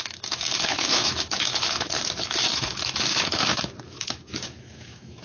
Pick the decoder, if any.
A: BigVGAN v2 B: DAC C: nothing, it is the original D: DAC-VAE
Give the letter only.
D